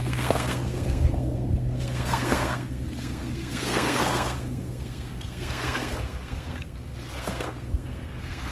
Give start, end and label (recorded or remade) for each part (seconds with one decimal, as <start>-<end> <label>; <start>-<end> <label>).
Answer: 0.0-8.5 remade